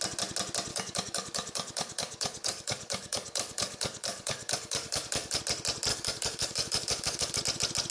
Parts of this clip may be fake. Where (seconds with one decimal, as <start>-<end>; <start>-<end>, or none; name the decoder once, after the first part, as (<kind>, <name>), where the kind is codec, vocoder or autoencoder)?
0.7-5.4 (codec, DAC); 5.9-7.4